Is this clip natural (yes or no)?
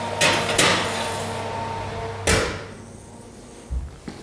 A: yes